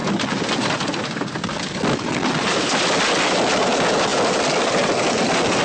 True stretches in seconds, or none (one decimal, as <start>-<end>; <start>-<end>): 0.0-5.6